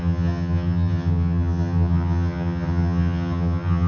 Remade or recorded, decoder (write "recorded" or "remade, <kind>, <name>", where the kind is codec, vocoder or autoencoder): remade, vocoder, HiFi-GAN